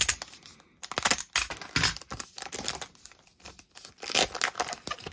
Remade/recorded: recorded